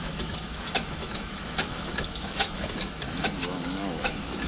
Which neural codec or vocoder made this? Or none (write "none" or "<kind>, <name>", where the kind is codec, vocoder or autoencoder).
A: autoencoder, DAC-VAE